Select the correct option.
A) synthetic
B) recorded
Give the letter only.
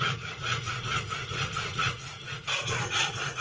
A